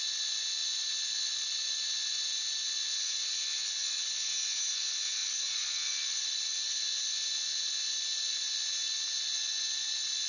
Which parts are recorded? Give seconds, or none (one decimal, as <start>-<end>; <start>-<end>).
0.0-5.2; 6.4-10.3